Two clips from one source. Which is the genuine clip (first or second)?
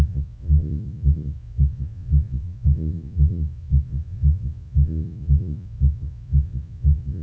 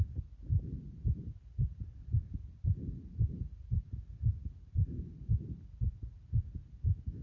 second